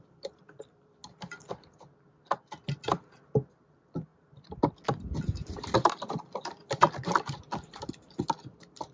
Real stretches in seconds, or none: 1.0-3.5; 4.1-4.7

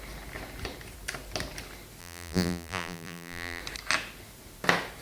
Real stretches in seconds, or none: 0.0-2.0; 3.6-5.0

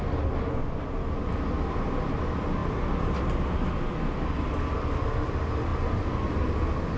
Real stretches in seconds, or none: 0.0-2.6; 3.3-7.0

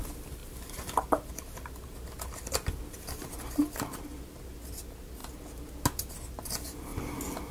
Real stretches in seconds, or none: 0.0-7.5

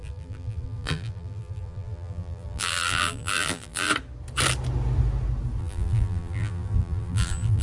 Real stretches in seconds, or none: 3.9-5.6

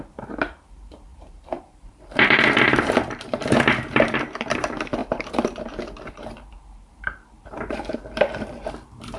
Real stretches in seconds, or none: none